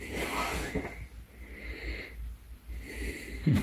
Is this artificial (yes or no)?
no